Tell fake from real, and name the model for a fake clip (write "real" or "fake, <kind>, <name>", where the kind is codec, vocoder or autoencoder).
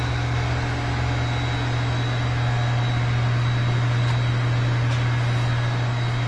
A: real